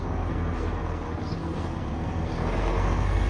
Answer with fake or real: fake